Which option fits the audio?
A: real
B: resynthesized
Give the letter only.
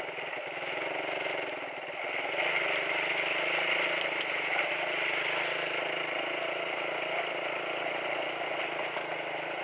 A